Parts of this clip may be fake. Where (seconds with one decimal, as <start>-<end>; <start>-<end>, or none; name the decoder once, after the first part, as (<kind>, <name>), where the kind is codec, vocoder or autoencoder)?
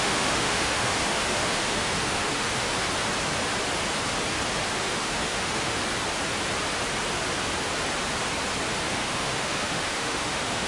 0.0-2.7 (autoencoder, DAC-VAE); 4.8-5.8; 8.9-10.7